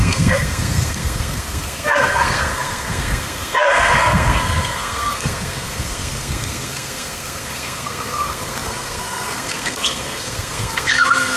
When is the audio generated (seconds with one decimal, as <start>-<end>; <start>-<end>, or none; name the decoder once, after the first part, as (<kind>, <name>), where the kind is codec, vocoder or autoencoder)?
0.0-11.4 (codec, SNAC)